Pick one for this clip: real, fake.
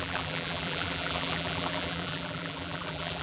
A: fake